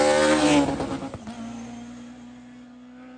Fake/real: real